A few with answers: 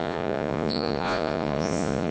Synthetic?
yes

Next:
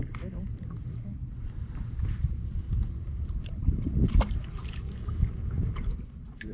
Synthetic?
yes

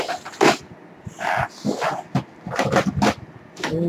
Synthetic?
no